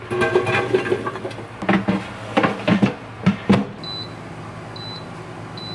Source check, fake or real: real